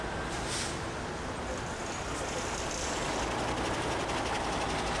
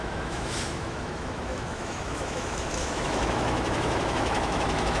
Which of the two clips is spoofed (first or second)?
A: second